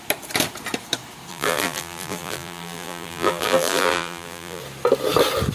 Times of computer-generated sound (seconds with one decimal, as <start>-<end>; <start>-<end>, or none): 1.3-4.6